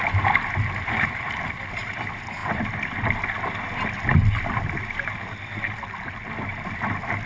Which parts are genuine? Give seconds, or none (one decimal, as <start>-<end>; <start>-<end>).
0.0-7.3